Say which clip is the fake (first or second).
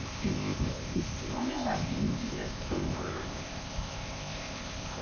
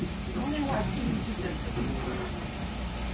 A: first